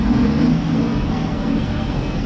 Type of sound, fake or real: fake